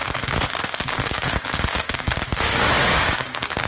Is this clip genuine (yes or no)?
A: no